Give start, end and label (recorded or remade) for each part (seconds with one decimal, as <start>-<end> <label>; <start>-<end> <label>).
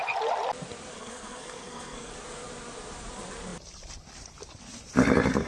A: 0.0-0.9 recorded; 0.9-2.1 remade; 2.1-5.5 recorded